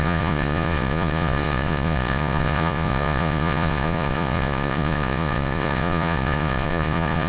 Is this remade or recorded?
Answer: remade